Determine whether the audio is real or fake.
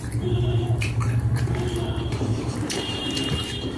fake